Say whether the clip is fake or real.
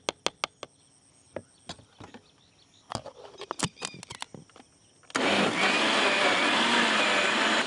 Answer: real